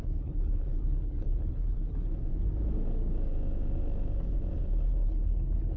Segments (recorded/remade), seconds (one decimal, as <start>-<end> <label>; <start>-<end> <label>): 0.0-2.1 remade; 2.1-4.9 recorded; 4.9-5.8 remade